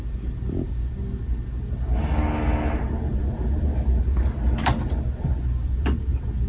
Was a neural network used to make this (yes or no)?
no